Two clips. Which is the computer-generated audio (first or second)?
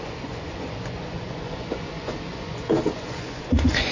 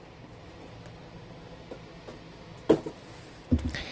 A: first